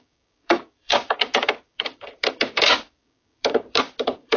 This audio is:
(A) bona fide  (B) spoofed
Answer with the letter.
B